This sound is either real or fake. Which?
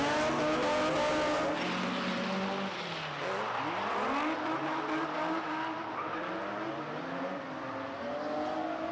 real